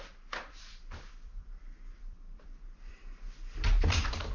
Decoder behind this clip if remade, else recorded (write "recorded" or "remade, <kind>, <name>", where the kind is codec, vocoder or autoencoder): remade, vocoder, BigVGAN v2